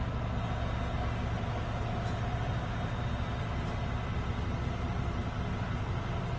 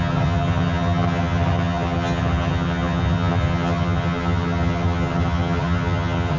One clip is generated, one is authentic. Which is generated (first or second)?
second